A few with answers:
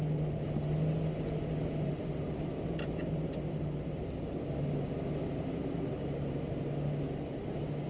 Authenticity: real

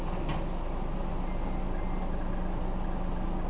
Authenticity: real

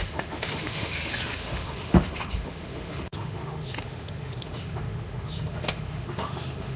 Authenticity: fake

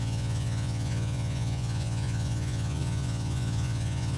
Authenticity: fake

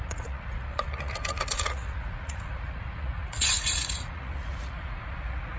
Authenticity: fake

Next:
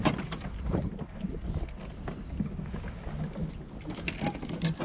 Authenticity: real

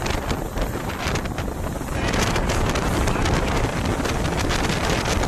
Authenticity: fake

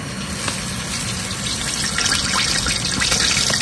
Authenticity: real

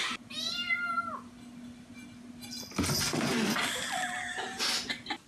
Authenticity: real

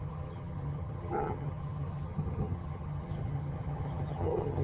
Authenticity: fake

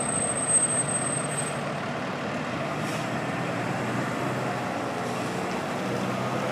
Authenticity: real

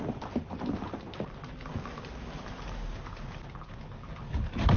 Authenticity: real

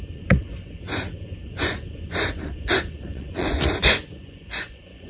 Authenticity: fake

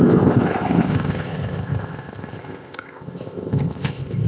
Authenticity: fake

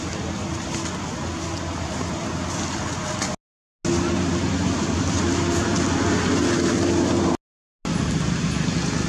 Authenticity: real